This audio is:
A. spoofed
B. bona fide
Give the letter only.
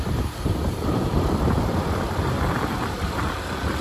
A